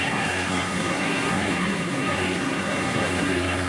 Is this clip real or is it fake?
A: fake